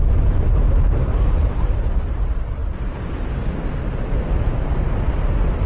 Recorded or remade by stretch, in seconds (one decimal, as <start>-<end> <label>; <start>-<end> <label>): 0.0-5.7 recorded

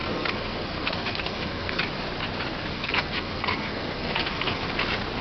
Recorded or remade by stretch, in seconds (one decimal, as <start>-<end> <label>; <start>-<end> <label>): 0.0-1.8 remade; 1.8-2.6 recorded; 2.6-4.7 remade; 4.7-5.2 recorded

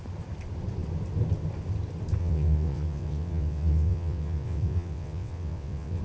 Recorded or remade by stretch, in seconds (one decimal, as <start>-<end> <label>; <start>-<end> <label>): 0.0-2.2 recorded; 2.2-6.0 remade

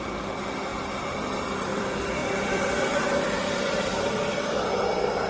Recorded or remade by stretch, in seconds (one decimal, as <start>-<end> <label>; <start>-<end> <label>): 0.0-0.7 remade; 0.7-1.6 recorded; 1.6-5.3 remade

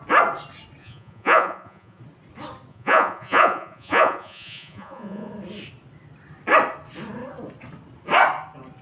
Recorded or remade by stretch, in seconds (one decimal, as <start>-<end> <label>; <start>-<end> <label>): 0.0-0.8 recorded; 0.8-2.0 remade; 2.0-2.7 recorded; 2.7-5.3 remade; 5.3-8.8 recorded

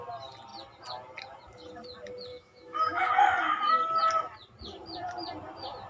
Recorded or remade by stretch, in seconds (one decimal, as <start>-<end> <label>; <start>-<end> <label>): 0.0-2.3 recorded; 2.3-3.1 remade; 3.1-5.9 recorded

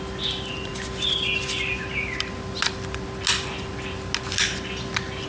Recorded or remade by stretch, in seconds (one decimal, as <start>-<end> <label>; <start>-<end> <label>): 0.0-5.3 recorded